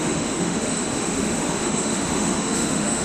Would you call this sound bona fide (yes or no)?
no